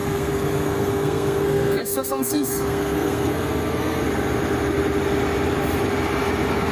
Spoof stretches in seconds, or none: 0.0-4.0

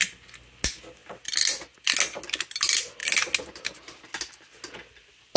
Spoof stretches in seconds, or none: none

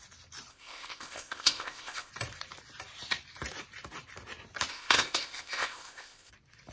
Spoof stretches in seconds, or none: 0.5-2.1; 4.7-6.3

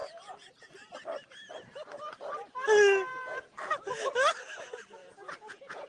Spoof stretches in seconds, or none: 0.0-0.7; 5.0-5.9

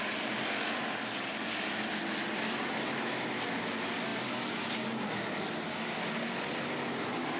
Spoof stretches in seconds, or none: none

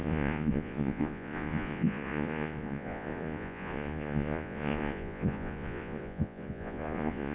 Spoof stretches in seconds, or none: 0.0-7.3

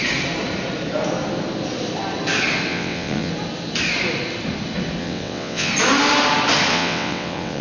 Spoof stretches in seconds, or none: 2.7-3.3; 5.0-5.7; 6.7-7.6